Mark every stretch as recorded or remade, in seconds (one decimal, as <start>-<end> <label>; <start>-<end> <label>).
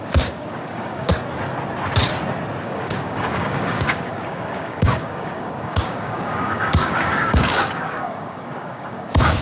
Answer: 0.0-1.1 remade; 1.1-2.6 recorded; 2.6-9.4 remade